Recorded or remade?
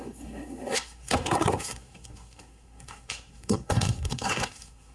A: remade